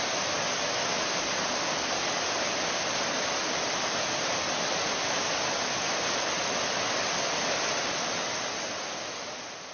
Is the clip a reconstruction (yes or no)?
no